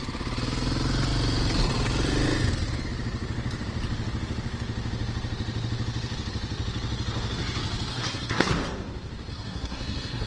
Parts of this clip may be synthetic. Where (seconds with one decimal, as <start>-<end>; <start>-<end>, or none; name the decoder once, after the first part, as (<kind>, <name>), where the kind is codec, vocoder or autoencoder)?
7.9-8.5 (codec, SNAC); 9.3-10.3